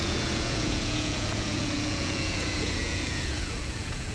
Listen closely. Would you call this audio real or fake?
fake